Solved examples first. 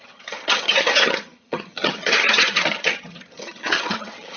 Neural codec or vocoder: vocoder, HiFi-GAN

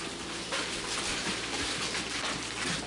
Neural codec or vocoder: none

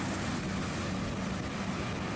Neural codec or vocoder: none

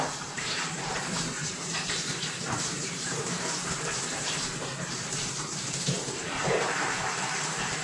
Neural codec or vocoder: vocoder, BigVGAN v2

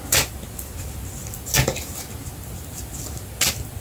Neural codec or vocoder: none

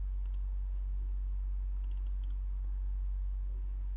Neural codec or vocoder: none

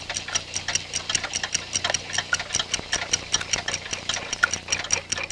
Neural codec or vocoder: none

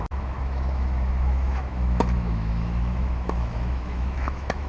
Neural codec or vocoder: autoencoder, DAC-VAE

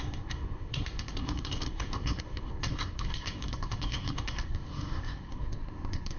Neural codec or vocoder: codec, SNAC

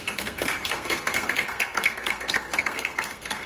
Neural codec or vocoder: codec, SNAC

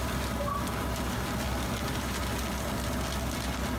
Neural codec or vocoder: none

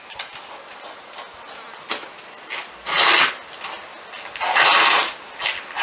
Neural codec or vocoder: none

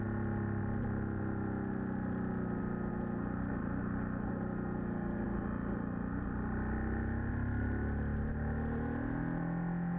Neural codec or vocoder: none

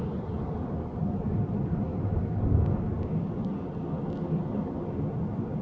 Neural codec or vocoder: none